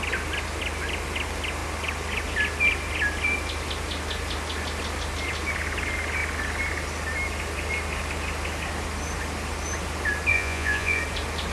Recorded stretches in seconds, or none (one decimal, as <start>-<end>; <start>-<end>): 0.0-10.3; 11.0-11.5